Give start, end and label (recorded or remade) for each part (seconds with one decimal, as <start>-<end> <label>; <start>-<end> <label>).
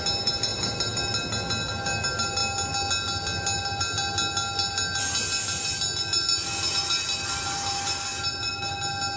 0.0-9.2 recorded